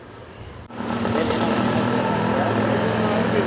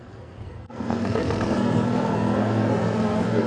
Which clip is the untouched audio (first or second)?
first